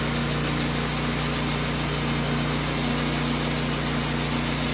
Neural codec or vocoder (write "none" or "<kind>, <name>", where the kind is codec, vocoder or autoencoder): none